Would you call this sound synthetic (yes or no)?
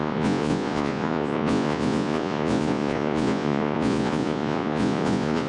yes